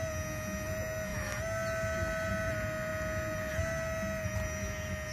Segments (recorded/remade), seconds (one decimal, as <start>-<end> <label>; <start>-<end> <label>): 0.0-5.1 recorded